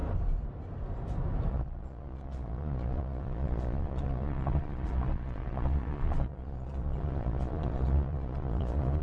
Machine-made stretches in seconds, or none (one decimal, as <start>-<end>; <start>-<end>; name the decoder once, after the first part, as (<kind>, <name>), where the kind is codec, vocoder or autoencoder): 1.5-9.0 (vocoder, Vocos)